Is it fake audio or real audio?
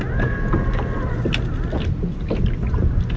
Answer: real